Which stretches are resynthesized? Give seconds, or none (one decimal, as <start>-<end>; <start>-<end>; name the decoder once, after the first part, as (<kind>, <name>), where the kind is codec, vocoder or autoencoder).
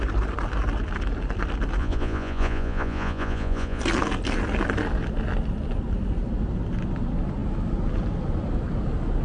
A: 1.8-3.8 (vocoder, Vocos)